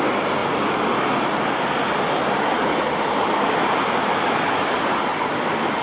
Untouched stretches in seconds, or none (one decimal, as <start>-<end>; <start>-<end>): 0.0-5.8